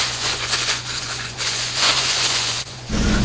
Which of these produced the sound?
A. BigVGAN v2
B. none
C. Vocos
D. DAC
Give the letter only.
C